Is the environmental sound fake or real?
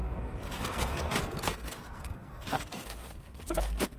fake